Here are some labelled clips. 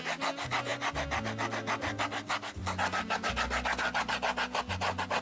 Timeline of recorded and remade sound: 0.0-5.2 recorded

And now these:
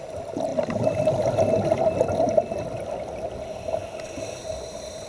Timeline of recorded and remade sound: 0.0-5.1 recorded

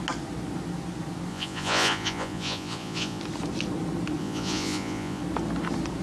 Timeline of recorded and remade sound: 0.0-1.3 recorded; 1.3-3.2 remade; 3.2-4.2 recorded; 4.2-5.2 remade; 5.2-6.0 recorded

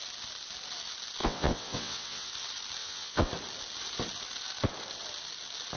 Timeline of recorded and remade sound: 0.0-1.2 recorded; 1.2-2.3 remade; 2.3-2.8 recorded; 2.8-3.3 remade; 3.3-5.8 recorded

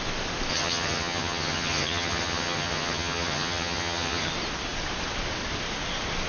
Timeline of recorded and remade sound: 0.0-0.5 recorded; 0.5-4.3 remade; 4.3-6.3 recorded